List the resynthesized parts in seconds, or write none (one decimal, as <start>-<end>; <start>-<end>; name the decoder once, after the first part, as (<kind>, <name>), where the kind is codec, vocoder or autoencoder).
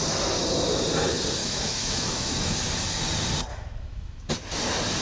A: 1.4-2.6 (autoencoder, DAC-VAE); 3.5-4.3